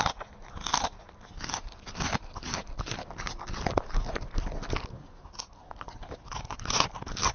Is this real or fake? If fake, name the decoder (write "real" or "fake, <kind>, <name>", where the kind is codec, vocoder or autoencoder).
real